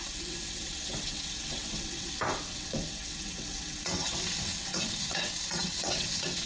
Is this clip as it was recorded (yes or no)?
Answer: no